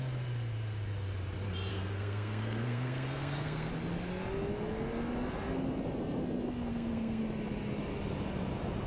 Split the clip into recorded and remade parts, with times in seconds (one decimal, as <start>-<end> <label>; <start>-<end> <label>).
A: 0.0-1.7 recorded; 1.7-3.7 remade; 3.7-6.7 recorded; 6.7-7.2 remade; 7.2-8.9 recorded